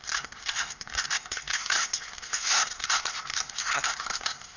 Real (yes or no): no